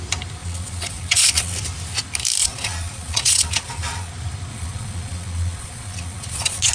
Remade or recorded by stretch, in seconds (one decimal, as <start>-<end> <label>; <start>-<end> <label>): 0.0-0.4 recorded; 0.4-1.6 remade; 1.6-2.4 recorded; 2.4-4.1 remade; 4.1-4.5 recorded; 4.5-6.7 remade